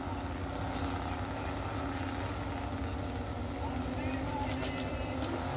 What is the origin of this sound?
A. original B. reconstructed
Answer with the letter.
A